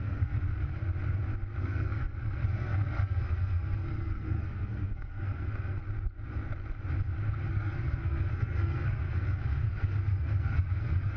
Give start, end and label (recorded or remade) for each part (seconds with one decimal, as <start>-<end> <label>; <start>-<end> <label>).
0.0-0.5 remade; 0.5-1.6 recorded; 1.6-5.8 remade; 5.8-7.5 recorded; 7.5-11.2 remade